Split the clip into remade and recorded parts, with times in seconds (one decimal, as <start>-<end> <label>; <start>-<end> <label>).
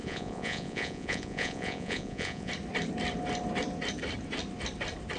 0.0-2.5 remade; 2.5-5.2 recorded